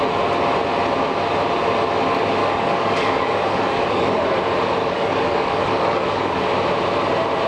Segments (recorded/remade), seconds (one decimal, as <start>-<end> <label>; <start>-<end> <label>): 0.0-2.4 recorded; 2.4-4.3 remade; 4.3-4.8 recorded; 4.8-6.4 remade; 6.4-7.5 recorded